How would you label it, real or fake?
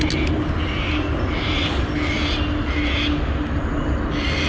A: real